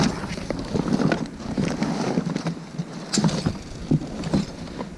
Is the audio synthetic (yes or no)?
no